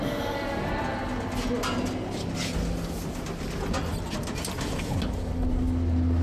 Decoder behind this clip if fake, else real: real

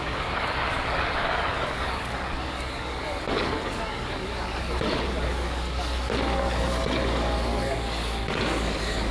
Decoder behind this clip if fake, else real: fake, codec, DAC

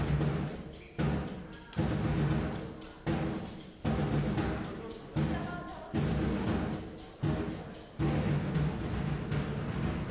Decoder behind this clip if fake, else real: real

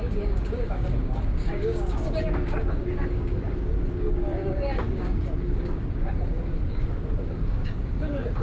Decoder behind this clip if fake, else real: fake, codec, DAC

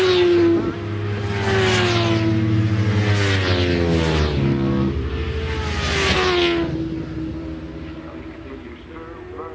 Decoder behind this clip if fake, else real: real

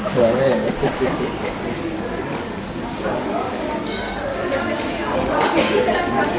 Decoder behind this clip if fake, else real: fake, codec, DAC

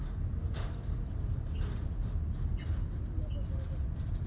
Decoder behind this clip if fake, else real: real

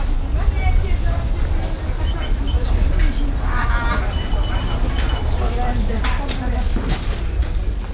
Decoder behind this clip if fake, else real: real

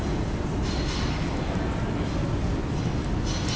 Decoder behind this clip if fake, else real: real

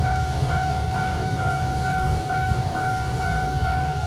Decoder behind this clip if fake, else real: fake, codec, DAC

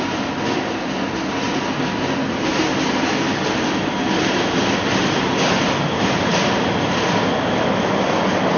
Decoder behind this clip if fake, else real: real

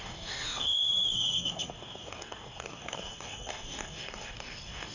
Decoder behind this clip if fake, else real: fake, codec, DAC